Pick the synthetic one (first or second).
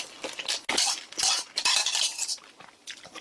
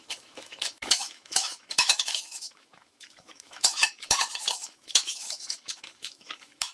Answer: second